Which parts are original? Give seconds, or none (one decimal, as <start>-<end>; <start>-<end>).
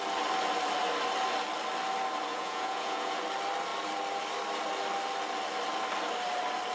0.0-2.3; 3.2-6.7